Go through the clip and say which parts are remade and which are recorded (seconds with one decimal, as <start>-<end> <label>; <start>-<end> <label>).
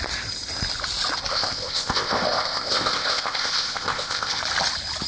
0.0-1.3 recorded; 1.3-4.4 remade; 4.4-5.1 recorded